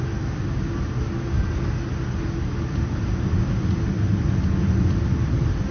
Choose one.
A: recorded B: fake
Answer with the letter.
A